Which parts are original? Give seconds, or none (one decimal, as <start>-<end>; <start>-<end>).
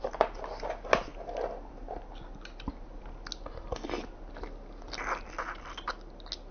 0.0-6.5